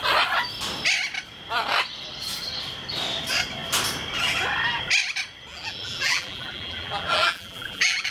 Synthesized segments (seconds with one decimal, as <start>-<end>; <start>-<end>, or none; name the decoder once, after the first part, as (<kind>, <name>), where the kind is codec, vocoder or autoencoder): 5.5-8.1 (vocoder, BigVGAN v2)